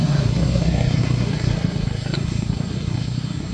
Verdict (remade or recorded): remade